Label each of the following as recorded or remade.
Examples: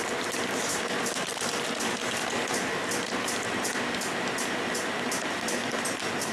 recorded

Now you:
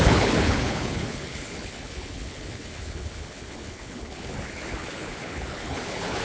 remade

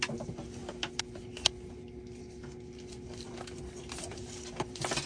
recorded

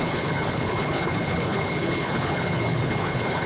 remade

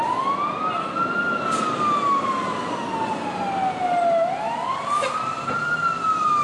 recorded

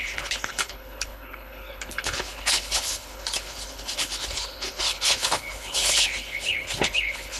remade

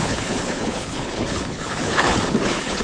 remade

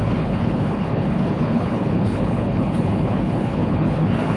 remade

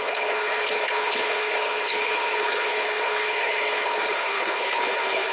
remade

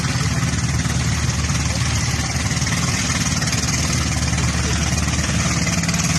recorded